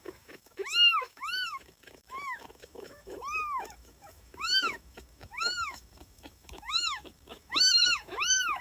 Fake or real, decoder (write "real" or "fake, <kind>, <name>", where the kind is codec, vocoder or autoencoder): fake, autoencoder, DAC-VAE